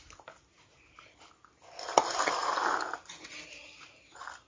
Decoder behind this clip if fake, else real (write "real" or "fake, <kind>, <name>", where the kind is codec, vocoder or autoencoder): real